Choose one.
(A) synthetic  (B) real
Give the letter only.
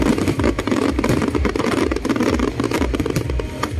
B